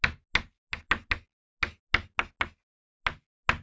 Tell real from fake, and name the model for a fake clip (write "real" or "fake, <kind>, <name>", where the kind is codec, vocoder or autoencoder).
real